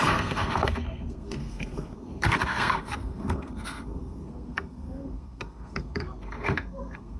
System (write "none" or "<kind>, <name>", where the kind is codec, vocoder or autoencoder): codec, SNAC